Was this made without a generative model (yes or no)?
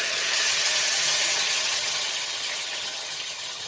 no